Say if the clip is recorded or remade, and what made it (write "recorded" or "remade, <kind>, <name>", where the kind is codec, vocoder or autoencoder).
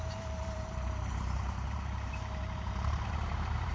remade, vocoder, BigVGAN v2